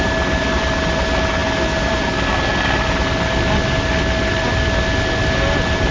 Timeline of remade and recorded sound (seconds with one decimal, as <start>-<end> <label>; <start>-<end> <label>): 0.0-5.9 recorded